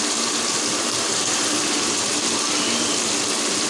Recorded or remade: recorded